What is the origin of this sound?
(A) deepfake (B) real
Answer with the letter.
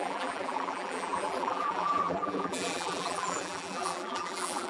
A